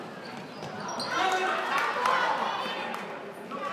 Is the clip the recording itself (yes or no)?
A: yes